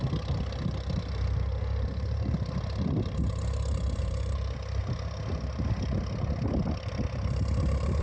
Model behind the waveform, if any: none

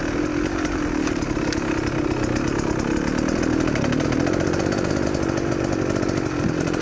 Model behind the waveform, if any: none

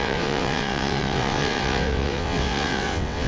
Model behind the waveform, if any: vocoder, WaveNeXt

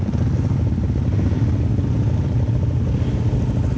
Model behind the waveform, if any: none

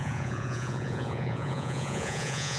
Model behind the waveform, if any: vocoder, Vocos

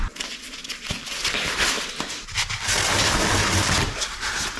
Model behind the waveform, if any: none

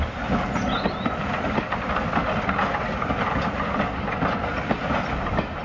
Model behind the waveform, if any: none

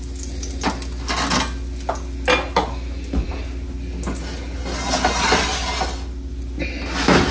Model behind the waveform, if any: none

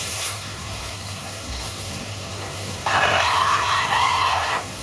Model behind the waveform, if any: codec, SNAC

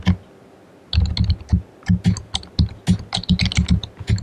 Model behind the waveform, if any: none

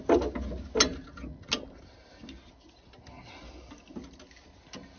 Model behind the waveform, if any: none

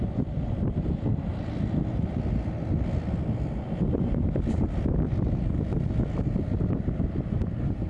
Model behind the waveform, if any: none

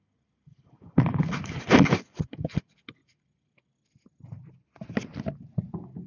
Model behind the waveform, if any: none